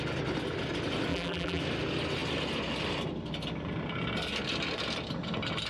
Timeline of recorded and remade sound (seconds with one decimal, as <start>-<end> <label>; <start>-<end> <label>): 0.0-1.1 recorded; 1.1-1.6 remade; 1.6-5.7 recorded